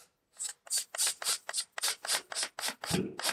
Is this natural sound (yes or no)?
yes